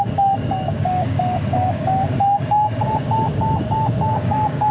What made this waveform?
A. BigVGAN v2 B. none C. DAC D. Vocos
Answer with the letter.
C